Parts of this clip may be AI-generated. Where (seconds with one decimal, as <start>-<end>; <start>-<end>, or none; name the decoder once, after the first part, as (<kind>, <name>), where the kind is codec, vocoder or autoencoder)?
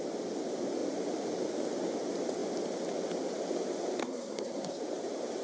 4.0-4.8 (codec, SNAC)